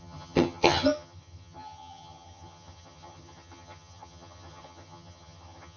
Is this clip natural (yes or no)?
no